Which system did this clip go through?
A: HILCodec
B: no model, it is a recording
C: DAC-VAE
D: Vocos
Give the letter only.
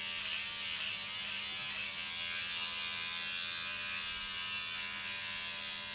B